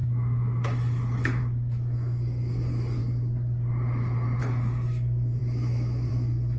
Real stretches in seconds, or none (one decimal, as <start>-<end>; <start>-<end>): 3.0-4.4